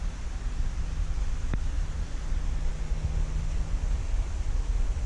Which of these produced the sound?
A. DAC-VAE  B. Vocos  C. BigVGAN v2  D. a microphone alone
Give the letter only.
D